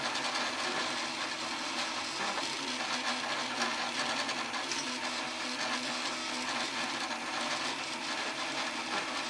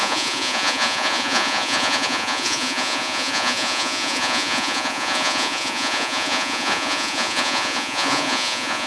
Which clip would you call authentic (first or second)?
first